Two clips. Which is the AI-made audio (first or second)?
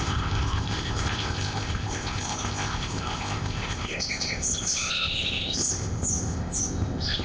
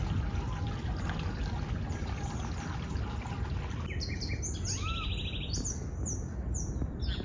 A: first